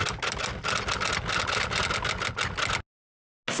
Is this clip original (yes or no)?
yes